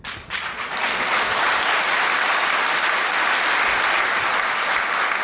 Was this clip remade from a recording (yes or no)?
no